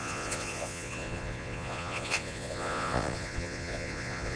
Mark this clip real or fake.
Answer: fake